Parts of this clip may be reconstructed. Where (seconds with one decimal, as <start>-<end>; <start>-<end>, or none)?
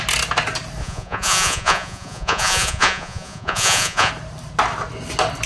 0.8-4.1